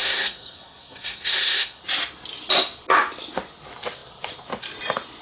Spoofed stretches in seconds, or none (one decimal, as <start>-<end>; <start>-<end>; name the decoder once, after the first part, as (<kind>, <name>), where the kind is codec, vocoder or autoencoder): 0.0-1.8 (codec, SNAC)